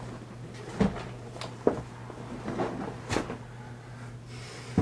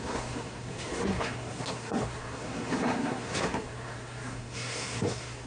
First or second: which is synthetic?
second